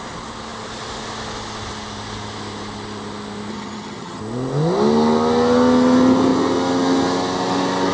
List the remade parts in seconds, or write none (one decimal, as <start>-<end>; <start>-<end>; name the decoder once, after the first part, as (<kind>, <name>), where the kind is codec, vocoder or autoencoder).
3.5-4.2 (vocoder, HiFi-GAN)